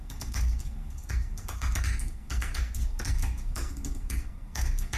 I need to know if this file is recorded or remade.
remade